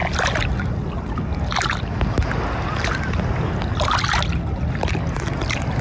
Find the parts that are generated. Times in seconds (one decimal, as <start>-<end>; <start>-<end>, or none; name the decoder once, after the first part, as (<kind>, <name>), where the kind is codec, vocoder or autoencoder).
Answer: none